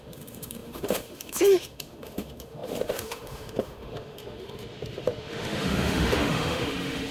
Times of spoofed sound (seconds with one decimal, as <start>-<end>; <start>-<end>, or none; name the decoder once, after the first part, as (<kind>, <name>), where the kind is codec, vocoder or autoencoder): 0.0-7.1 (autoencoder, DAC-VAE)